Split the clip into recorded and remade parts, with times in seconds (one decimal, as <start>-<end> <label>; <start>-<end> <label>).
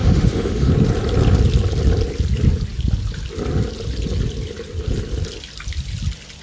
0.0-0.7 remade; 0.7-6.4 recorded